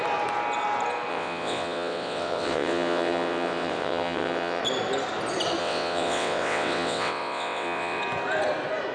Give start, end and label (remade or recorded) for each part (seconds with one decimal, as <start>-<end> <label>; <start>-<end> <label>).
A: 0.0-1.1 recorded; 1.1-4.6 remade; 4.6-5.6 recorded; 5.6-8.0 remade; 8.0-8.9 recorded

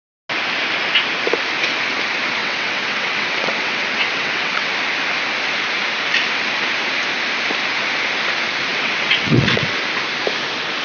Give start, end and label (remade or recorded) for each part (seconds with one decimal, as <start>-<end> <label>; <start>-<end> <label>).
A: 0.0-2.4 recorded; 2.4-4.7 remade; 4.7-8.7 recorded; 8.7-9.7 remade; 9.7-10.8 recorded

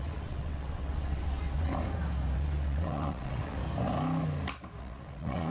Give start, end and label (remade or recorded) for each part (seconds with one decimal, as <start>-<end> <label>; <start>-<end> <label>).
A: 0.0-1.7 remade; 1.7-2.4 recorded; 2.4-3.6 remade; 3.6-4.8 recorded; 4.8-5.5 remade